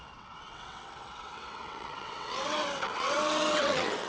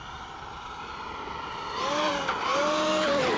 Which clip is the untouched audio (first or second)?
second